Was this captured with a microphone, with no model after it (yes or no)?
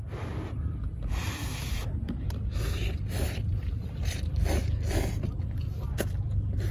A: no